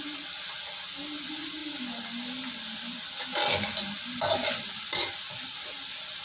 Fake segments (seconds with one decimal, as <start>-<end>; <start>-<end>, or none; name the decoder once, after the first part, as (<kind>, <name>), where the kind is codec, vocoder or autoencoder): none